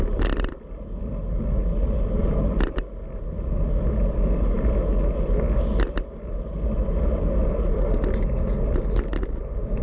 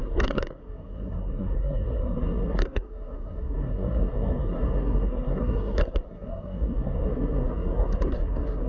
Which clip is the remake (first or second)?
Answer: second